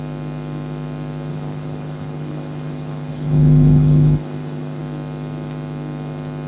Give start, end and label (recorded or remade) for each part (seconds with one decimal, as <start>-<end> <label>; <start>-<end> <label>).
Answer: 0.0-1.3 recorded; 1.3-4.8 remade; 4.8-6.5 recorded